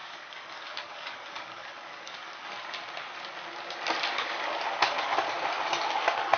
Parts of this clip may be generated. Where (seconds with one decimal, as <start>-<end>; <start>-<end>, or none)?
0.0-2.5